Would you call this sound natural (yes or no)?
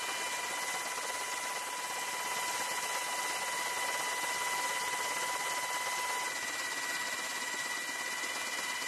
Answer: yes